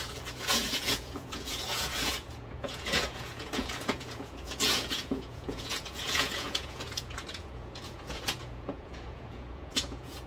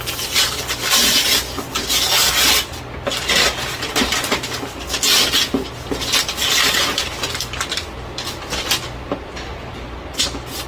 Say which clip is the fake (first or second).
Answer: first